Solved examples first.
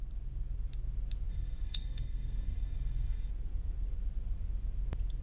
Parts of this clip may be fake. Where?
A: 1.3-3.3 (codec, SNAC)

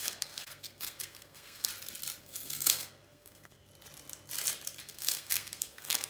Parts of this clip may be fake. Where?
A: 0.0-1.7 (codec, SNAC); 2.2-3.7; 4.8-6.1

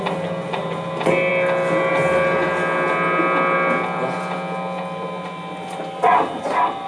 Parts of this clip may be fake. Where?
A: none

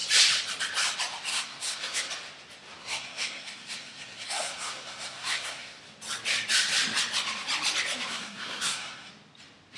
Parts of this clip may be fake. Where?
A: 1.3-2.1 (codec, SNAC); 2.8-5.8; 8.1-9.1

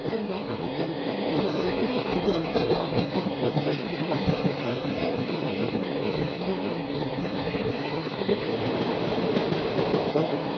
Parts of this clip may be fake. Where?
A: 0.0-8.5 (codec, SNAC); 10.1-10.6